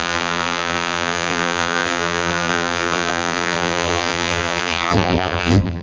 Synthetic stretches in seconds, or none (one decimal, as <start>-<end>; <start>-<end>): 0.0-5.8

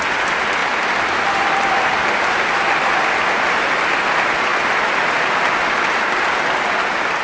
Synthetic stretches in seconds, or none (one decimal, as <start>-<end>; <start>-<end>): 0.6-2.8

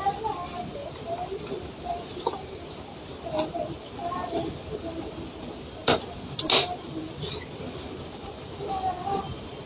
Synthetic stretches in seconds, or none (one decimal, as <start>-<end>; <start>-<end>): none

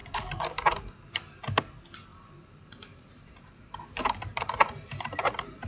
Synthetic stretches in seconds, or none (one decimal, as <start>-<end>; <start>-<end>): 0.0-1.0; 2.1-5.7

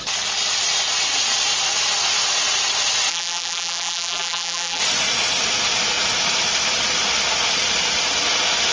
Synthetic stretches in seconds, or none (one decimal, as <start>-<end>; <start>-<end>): 3.1-4.8

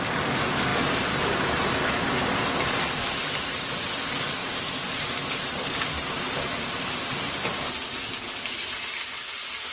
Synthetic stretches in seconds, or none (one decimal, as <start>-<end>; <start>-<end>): 4.4-7.7

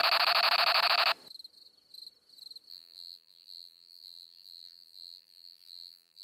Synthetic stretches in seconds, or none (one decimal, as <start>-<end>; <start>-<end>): 2.7-6.2

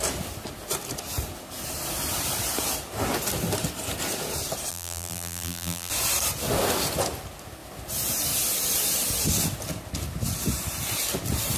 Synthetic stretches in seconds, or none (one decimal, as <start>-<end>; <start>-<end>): 4.7-5.9